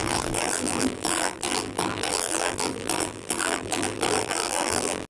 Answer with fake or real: fake